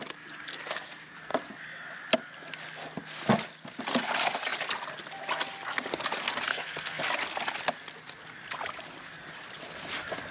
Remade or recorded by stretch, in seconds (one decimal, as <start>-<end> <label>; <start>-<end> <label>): 0.0-6.5 recorded; 6.5-7.0 remade; 7.0-10.3 recorded